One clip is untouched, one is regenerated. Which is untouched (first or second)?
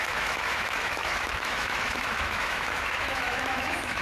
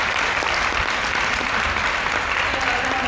second